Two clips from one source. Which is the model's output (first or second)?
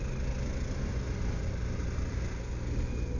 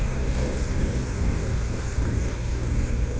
second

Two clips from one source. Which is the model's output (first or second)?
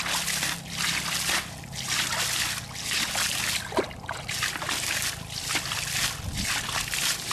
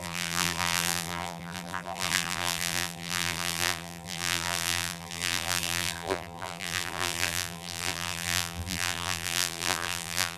second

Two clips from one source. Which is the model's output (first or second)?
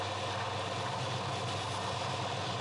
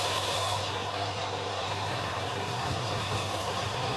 second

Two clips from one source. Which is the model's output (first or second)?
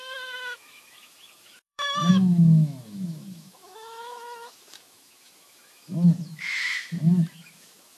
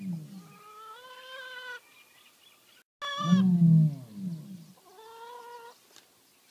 first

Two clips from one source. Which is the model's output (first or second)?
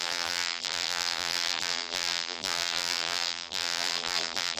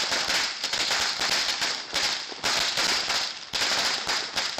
first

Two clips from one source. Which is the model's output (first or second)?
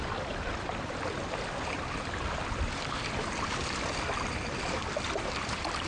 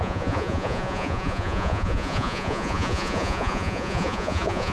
second